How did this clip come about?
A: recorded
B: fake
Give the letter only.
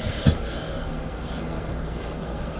B